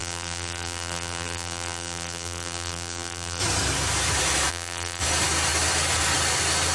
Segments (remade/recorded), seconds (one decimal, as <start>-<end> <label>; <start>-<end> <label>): 0.0-3.4 remade; 3.4-4.5 recorded; 4.5-5.0 remade; 5.0-6.7 recorded

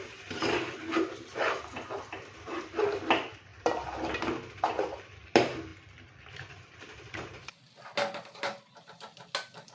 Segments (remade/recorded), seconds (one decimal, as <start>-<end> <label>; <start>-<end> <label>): 0.0-9.7 recorded

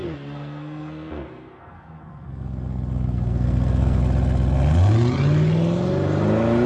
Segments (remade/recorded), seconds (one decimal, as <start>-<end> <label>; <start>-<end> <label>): 0.0-4.0 remade; 4.0-6.7 recorded

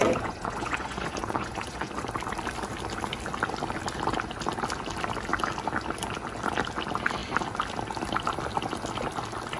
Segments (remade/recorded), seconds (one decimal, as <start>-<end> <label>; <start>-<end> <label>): 0.0-1.9 remade; 1.9-9.6 recorded

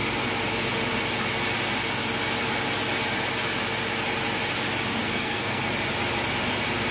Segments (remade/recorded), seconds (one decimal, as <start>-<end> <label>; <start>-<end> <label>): 0.0-5.0 recorded; 5.0-5.6 remade; 5.6-6.9 recorded

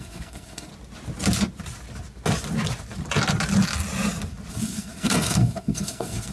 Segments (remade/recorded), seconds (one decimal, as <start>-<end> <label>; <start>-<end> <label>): 0.0-0.7 remade; 0.7-4.5 recorded; 4.5-6.3 remade

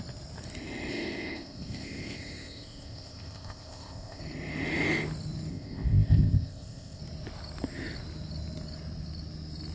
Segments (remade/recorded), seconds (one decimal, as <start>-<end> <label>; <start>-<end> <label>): 0.0-0.9 recorded; 0.9-4.2 remade; 4.2-5.5 recorded; 5.5-7.0 remade; 7.0-9.7 recorded